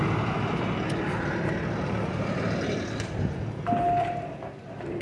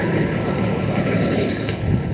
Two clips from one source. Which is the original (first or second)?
first